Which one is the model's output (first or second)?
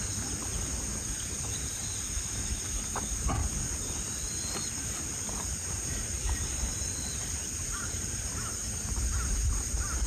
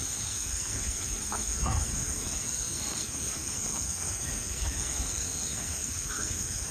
second